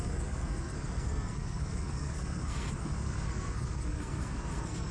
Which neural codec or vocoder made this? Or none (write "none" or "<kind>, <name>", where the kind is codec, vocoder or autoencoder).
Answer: codec, SNAC